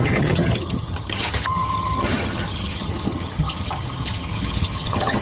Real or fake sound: fake